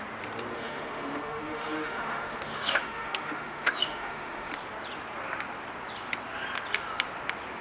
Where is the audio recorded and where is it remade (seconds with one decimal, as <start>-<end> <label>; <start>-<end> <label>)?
0.0-0.5 recorded; 0.5-4.5 remade; 4.5-7.6 recorded

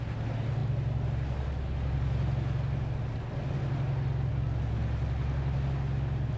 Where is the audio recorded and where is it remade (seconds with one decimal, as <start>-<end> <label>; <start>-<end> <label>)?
0.0-6.4 recorded

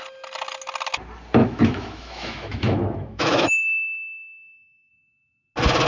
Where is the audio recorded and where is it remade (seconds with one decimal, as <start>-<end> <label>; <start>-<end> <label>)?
0.0-1.4 recorded; 1.4-4.9 remade; 4.9-5.9 recorded